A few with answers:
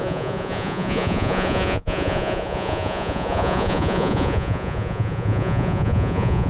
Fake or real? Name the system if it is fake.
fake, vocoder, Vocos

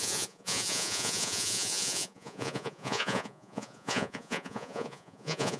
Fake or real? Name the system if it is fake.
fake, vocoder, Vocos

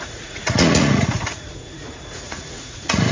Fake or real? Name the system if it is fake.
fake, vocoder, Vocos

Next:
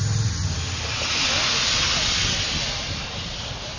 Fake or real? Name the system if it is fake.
real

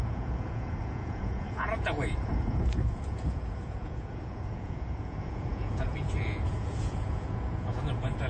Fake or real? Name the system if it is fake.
fake, vocoder, Vocos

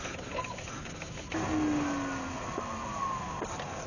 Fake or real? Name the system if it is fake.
real